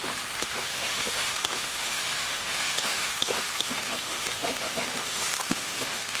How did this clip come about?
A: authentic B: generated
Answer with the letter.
B